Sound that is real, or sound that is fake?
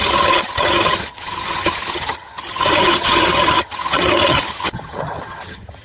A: fake